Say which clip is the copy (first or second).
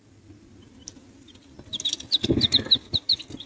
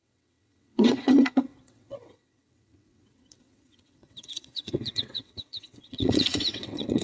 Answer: second